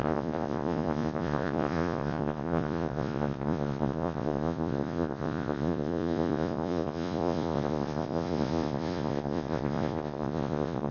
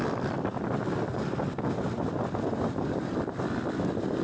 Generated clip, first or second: first